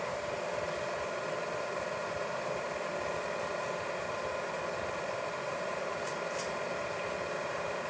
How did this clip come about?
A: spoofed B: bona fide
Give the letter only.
B